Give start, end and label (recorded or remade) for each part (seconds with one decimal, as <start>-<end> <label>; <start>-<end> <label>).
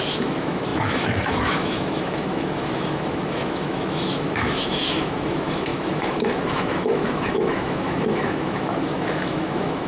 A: 0.0-9.9 remade